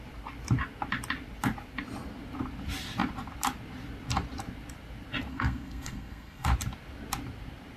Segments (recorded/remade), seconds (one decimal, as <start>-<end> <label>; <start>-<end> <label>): 0.0-5.3 recorded; 5.3-6.5 remade; 6.5-7.8 recorded